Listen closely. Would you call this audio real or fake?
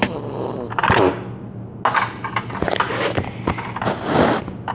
real